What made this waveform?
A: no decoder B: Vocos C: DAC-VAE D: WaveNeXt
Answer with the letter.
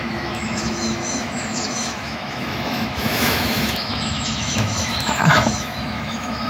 C